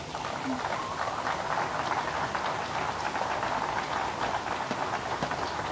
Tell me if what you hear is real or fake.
real